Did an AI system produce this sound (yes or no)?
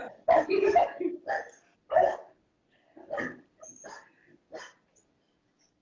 no